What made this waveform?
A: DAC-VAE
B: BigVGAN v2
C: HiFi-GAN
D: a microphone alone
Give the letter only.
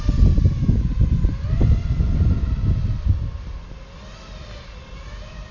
D